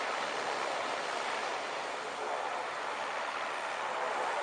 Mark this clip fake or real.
real